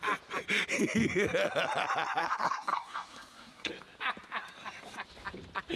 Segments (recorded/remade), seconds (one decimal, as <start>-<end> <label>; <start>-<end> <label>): 0.0-2.2 recorded; 2.2-3.7 remade; 3.7-5.8 recorded